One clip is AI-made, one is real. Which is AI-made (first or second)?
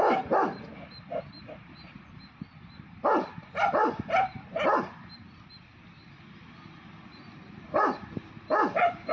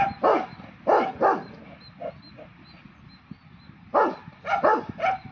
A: first